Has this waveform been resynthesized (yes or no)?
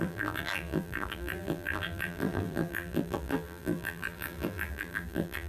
yes